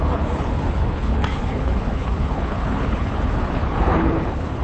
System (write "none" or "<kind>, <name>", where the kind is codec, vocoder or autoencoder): codec, HILCodec